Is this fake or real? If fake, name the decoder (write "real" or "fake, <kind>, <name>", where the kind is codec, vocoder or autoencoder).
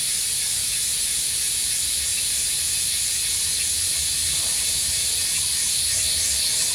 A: real